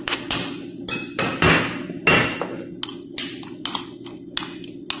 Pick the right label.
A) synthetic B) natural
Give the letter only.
B